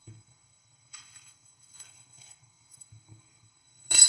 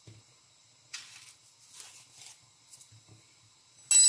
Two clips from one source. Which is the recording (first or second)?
second